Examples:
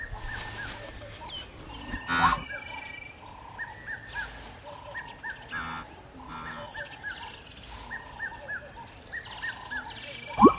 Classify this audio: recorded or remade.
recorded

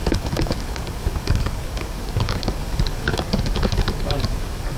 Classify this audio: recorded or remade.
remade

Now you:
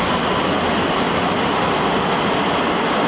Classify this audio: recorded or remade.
recorded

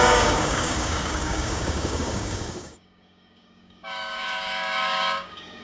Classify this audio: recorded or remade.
remade